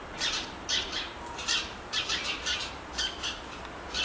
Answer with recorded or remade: remade